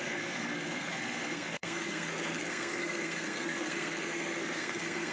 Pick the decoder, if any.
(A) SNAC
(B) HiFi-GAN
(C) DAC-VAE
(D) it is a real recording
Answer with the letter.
A